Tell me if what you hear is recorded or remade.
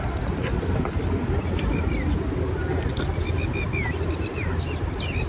recorded